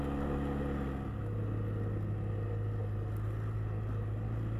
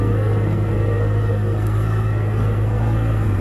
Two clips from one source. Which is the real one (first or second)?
first